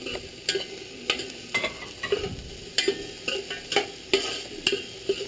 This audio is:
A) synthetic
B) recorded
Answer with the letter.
B